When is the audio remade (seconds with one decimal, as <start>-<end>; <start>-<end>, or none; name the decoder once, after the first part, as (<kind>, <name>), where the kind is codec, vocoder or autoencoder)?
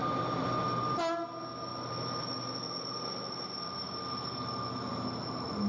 none